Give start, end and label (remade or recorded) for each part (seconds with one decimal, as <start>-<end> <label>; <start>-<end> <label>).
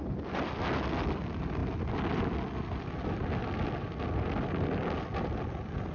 0.0-5.9 recorded